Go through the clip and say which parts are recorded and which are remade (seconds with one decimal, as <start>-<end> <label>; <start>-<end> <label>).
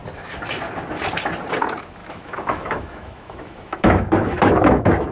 0.0-2.0 recorded; 2.0-5.1 remade